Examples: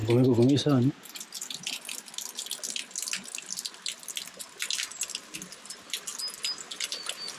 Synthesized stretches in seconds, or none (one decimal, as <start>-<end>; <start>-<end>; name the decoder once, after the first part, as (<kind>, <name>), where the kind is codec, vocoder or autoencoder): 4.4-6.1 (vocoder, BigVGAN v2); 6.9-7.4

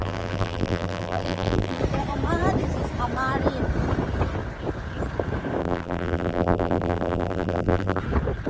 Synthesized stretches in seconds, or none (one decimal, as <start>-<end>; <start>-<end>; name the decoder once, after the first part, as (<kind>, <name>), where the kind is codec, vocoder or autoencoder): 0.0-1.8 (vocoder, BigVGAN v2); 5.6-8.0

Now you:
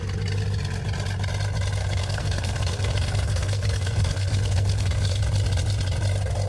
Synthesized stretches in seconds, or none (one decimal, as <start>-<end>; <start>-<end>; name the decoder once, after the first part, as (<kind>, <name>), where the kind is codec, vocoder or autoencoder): 1.8-5.2 (codec, SNAC)

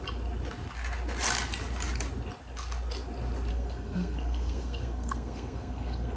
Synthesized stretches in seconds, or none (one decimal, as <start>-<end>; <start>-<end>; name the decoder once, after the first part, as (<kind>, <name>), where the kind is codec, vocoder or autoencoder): 3.5-6.2 (codec, SNAC)